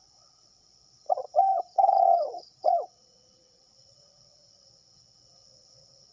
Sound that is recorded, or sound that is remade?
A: remade